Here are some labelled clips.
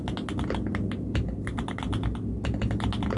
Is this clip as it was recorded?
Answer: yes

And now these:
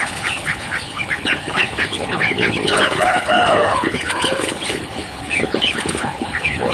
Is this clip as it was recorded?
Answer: no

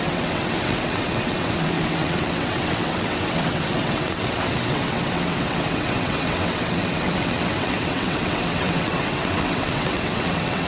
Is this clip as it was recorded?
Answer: no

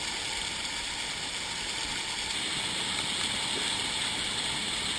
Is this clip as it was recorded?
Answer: yes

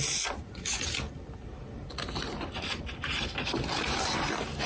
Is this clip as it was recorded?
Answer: yes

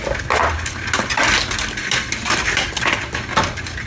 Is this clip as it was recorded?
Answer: yes